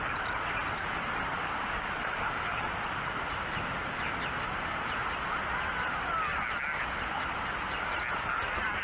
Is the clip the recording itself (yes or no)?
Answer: yes